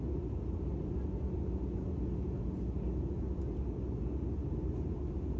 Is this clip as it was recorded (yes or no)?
yes